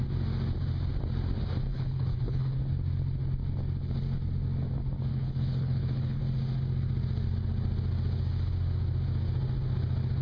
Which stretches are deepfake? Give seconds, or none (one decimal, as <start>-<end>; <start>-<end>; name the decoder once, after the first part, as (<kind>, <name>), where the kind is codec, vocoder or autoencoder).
1.7-2.4 (codec, HILCodec); 5.1-6.2